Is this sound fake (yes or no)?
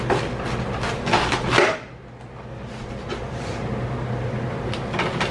no